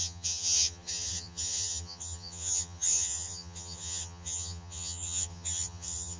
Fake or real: fake